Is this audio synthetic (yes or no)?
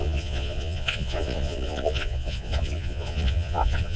yes